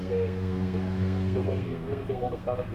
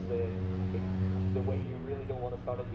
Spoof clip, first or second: first